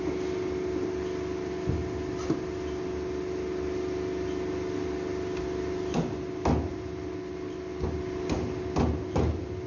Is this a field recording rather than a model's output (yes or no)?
yes